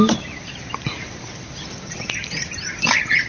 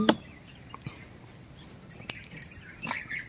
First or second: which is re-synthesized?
first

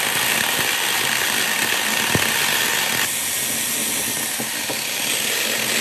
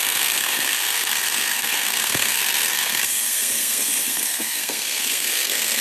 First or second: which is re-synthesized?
second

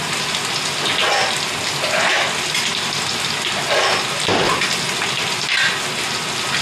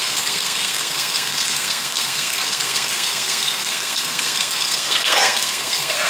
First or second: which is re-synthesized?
second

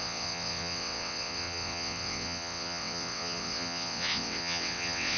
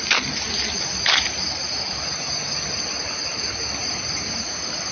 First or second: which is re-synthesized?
first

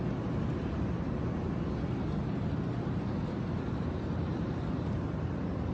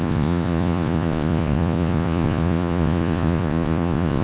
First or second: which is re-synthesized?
second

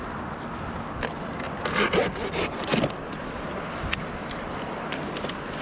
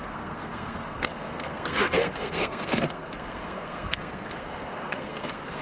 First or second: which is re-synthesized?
second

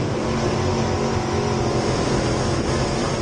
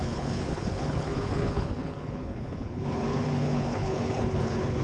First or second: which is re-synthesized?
second